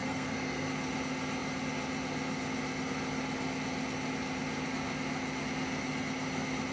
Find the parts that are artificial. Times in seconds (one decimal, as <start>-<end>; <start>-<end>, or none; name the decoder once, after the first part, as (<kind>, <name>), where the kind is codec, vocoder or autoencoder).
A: 0.0-0.7 (codec, SNAC)